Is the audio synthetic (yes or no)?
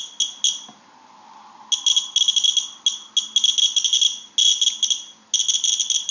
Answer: no